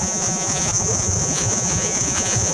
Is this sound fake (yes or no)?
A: yes